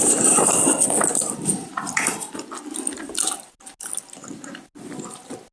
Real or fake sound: real